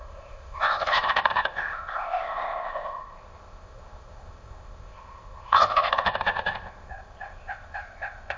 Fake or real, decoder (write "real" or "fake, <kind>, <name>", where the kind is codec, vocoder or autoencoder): fake, codec, ZipCodec